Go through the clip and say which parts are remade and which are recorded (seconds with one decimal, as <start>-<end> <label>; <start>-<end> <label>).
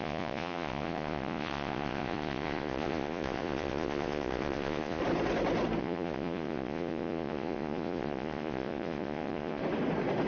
0.0-5.0 remade; 5.0-5.8 recorded; 5.8-9.6 remade; 9.6-10.3 recorded